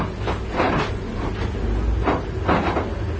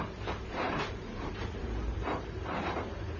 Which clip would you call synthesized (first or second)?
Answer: second